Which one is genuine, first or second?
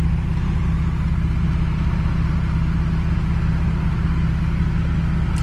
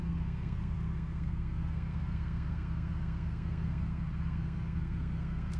first